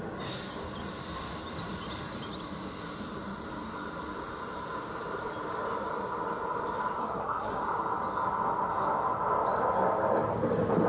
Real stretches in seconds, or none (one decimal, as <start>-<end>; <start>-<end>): 0.0-7.0; 7.6-10.9